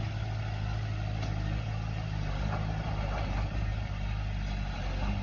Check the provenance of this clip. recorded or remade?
recorded